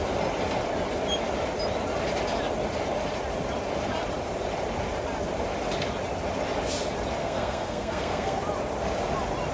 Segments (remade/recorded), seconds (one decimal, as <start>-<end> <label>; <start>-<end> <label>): 0.0-7.2 recorded; 7.2-8.4 remade; 8.4-9.5 recorded